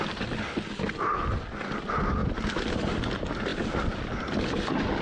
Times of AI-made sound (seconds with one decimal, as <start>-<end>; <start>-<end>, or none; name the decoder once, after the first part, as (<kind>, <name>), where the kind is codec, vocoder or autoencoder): none